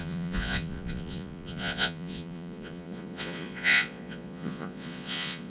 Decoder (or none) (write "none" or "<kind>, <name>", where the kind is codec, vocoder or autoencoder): vocoder, Vocos